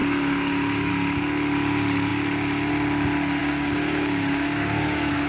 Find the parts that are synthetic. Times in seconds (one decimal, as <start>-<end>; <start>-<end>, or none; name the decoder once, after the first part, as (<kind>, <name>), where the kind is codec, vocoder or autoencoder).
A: 0.0-0.9 (codec, DAC); 3.4-5.3